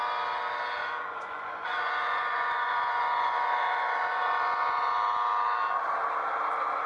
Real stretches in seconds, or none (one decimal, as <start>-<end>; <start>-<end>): 0.0-0.8; 4.9-6.9